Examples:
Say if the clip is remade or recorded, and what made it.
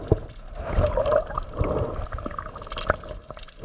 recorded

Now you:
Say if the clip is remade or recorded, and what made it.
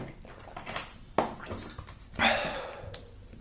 recorded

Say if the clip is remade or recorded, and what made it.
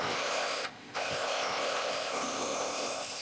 remade, codec, ZipCodec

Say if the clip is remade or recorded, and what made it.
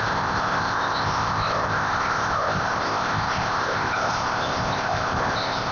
remade, codec, ZipCodec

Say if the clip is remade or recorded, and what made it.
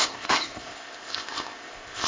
remade, codec, ZipCodec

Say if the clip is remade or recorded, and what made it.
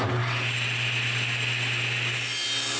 recorded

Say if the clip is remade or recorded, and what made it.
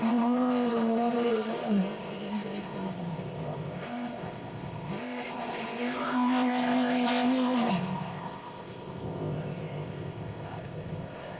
remade, codec, ZipCodec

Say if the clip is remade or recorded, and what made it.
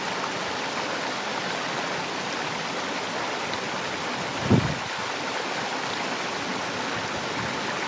recorded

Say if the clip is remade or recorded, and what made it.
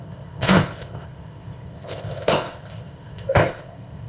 remade, codec, ZipCodec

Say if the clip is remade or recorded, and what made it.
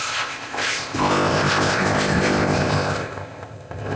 remade, codec, ZipCodec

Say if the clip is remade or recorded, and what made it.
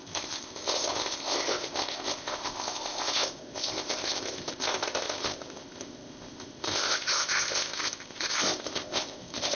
remade, codec, ZipCodec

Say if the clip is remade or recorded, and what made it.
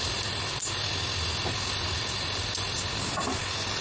recorded